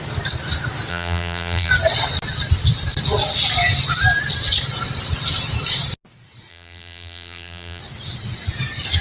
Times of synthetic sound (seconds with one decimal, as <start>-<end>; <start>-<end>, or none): 0.9-1.7; 6.5-7.8